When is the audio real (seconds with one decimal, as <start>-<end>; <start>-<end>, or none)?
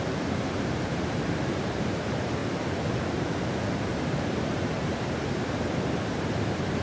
none